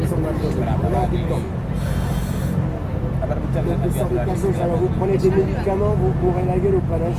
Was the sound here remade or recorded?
recorded